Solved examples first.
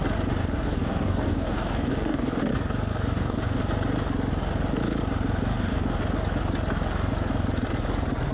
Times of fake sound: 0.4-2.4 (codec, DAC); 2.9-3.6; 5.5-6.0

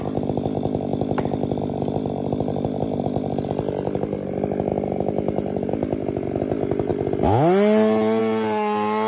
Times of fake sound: none

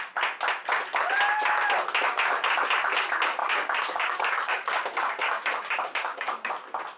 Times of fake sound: 3.4-6.5 (codec, DAC)

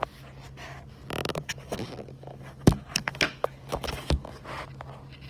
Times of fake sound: 1.3-4.4 (codec, DAC)